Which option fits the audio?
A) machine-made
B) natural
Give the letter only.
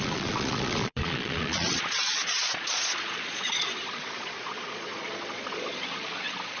A